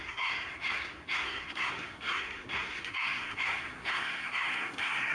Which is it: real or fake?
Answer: fake